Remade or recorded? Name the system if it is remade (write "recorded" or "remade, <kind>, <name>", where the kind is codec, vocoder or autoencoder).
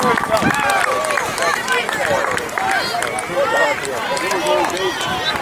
recorded